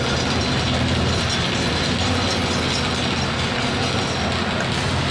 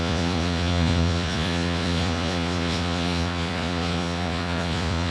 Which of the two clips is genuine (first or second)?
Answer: first